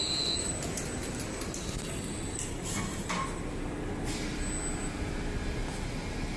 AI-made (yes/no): no